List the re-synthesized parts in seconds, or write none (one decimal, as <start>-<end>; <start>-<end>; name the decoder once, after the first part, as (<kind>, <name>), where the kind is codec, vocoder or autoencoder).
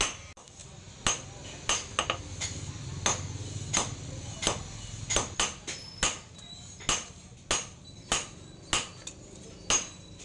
none